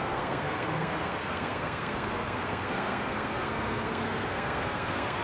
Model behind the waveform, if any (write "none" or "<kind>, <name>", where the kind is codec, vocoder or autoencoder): codec, SNAC